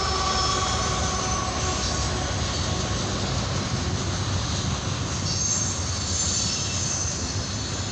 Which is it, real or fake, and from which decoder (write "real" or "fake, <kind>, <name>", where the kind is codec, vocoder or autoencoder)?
real